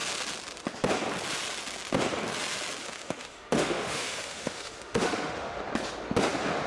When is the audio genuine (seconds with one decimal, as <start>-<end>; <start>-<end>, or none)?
0.0-2.8; 5.6-6.7